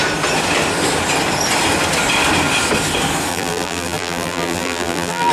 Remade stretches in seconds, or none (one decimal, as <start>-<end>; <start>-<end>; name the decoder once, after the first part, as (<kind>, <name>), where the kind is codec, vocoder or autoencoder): 3.3-5.3 (vocoder, BigVGAN v2)